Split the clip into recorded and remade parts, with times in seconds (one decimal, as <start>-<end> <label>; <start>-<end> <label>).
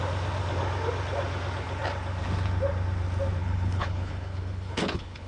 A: 0.0-3.4 recorded; 3.4-5.3 remade